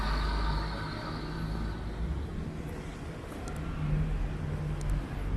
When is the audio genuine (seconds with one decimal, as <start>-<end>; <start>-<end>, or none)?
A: 0.0-5.4